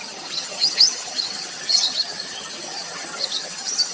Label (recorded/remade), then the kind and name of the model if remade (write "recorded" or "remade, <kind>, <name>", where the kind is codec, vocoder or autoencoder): remade, vocoder, HiFi-GAN